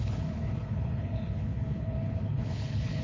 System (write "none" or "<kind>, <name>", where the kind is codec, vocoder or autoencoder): codec, HILCodec